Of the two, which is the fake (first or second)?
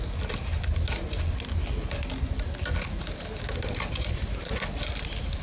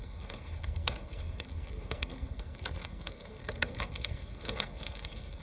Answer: second